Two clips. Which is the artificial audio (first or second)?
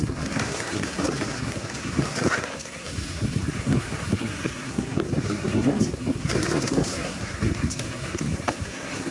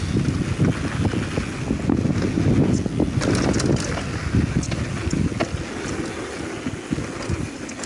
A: first